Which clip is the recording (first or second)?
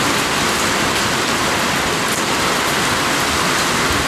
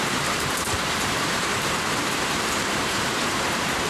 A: first